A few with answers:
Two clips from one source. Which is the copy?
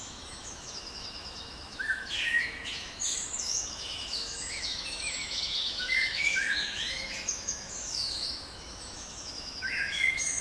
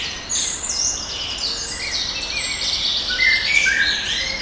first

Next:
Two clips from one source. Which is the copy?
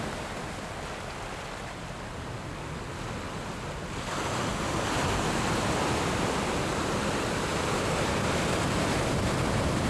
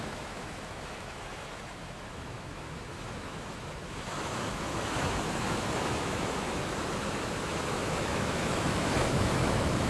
second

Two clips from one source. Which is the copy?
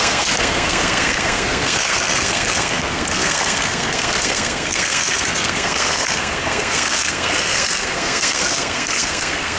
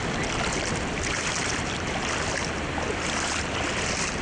first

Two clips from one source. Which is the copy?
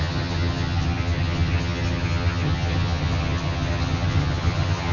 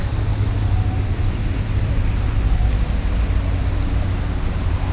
first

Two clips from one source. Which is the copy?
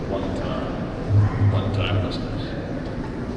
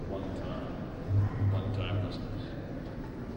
first